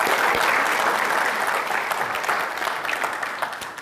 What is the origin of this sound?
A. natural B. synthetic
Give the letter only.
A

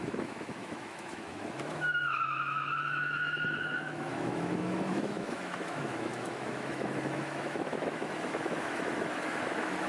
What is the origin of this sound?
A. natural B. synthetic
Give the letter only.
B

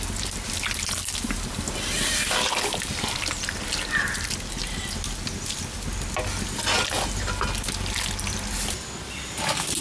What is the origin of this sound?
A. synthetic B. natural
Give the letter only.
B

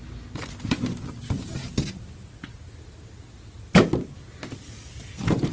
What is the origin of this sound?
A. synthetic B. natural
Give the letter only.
B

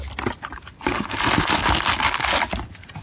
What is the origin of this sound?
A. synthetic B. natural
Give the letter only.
B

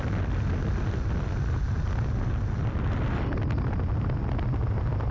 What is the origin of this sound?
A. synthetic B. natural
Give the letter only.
B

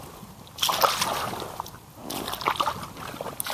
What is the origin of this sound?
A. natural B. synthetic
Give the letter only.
A